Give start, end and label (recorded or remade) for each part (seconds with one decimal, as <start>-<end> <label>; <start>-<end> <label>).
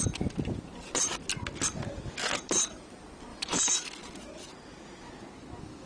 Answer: 0.0-3.3 recorded; 3.3-3.9 remade; 3.9-5.9 recorded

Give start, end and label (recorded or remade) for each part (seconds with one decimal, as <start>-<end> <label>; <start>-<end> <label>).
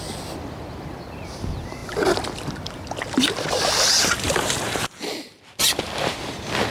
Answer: 0.0-6.7 recorded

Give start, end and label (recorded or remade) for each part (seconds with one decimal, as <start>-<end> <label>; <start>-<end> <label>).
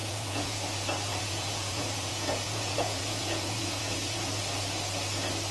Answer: 0.0-0.6 remade; 0.6-1.1 recorded; 1.1-4.4 remade; 4.4-5.5 recorded